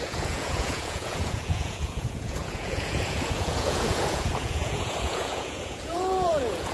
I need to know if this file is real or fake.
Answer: fake